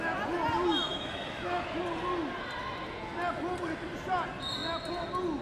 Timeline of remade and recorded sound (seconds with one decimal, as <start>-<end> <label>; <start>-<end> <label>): 0.0-0.9 recorded; 0.9-1.8 remade; 1.8-5.4 recorded